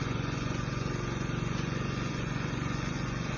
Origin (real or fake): fake